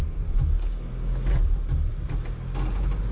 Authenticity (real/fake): real